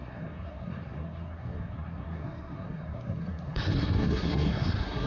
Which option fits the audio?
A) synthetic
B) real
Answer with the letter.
A